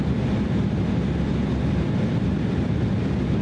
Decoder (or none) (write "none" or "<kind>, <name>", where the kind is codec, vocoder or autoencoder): none